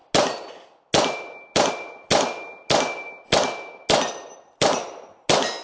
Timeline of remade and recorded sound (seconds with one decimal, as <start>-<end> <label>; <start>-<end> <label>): 0.0-5.6 recorded